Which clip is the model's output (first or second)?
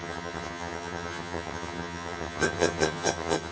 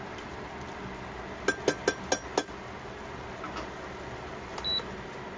first